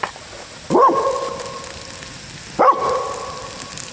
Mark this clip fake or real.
real